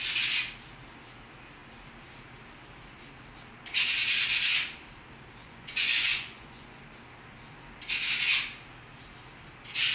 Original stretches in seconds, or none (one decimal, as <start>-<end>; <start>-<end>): 0.0-5.4; 6.8-9.9